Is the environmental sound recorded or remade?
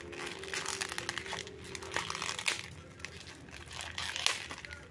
recorded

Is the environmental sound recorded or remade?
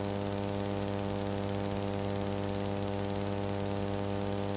remade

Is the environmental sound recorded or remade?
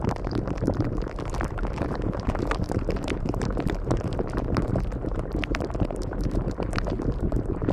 remade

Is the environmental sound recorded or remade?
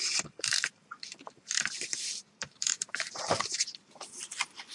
remade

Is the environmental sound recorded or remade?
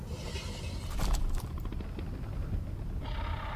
recorded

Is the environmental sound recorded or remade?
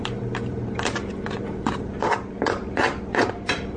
remade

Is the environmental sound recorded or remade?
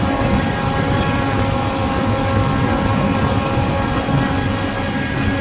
recorded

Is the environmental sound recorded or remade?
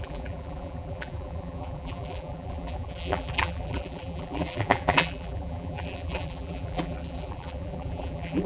remade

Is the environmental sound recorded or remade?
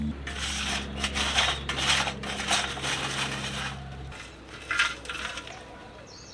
recorded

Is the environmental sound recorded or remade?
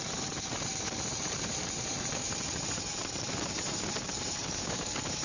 remade